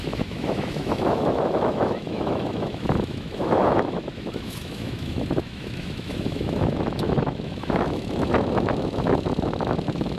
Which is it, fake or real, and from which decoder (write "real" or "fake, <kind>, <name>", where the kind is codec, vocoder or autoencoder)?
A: fake, autoencoder, DAC-VAE